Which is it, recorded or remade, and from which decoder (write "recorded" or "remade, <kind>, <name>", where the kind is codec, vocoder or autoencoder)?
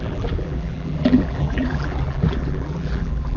remade, vocoder, BigVGAN v2